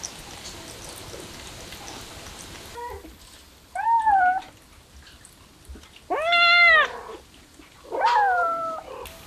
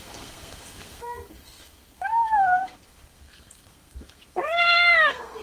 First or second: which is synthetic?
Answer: second